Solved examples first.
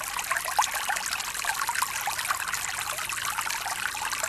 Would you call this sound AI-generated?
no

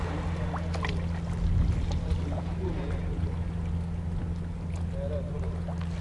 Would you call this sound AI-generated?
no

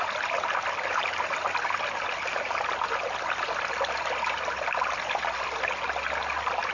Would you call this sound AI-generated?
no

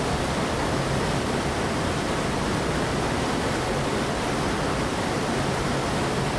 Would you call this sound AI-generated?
no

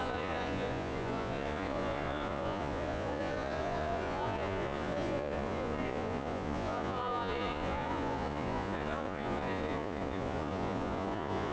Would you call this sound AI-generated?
yes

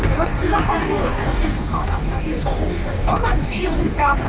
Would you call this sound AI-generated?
yes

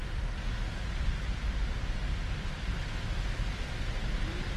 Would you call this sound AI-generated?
no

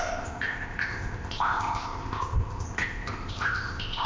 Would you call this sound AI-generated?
yes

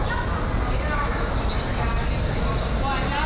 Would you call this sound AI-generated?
no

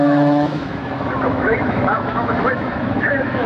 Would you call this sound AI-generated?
yes